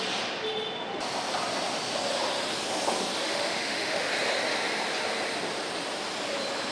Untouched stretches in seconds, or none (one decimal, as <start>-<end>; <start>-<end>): 0.0-3.2; 4.1-6.7